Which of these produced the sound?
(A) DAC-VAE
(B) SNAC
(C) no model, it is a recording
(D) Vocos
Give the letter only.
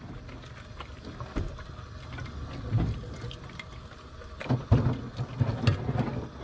C